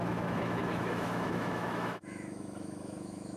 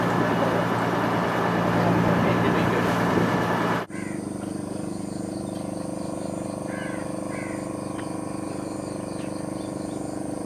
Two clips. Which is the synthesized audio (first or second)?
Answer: first